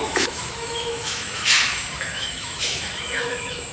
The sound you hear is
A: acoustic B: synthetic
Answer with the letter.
B